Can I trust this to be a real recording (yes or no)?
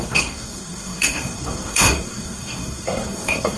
no